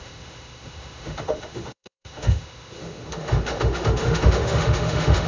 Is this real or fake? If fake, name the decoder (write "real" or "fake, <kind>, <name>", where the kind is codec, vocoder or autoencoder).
fake, autoencoder, DAC-VAE